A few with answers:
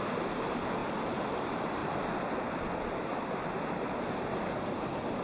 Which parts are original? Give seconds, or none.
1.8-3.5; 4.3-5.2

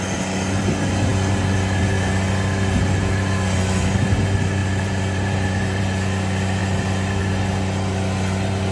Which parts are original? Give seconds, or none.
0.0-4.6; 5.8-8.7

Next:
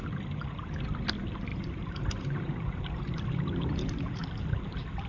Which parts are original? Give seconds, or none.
0.0-1.5; 4.6-5.1

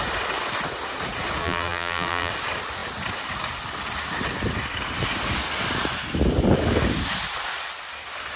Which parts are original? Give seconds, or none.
0.0-1.4; 2.3-8.4